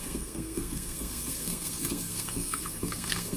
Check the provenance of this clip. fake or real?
fake